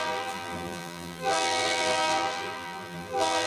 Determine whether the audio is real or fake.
fake